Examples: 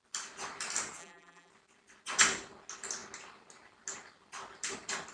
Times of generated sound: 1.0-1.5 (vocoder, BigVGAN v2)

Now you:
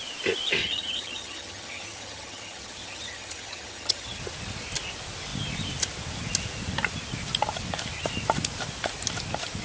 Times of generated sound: 0.6-4.2 (vocoder, HiFi-GAN)

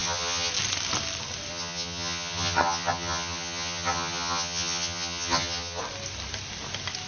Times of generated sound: 0.0-0.5 (vocoder, HiFi-GAN); 1.5-5.8

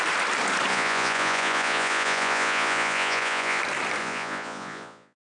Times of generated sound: 0.7-3.6 (vocoder, Vocos); 4.0-5.3

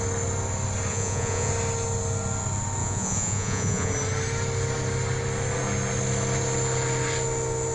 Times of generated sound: 0.9-1.5 (vocoder, Vocos); 2.8-3.9

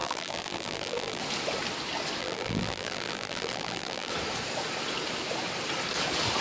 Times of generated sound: 0.0-1.2 (vocoder, BigVGAN v2); 2.2-4.1